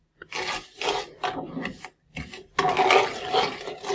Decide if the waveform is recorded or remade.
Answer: recorded